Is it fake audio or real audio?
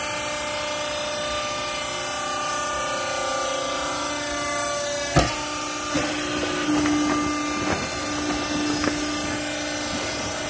real